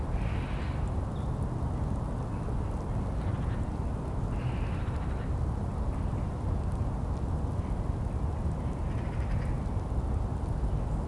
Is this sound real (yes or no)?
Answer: yes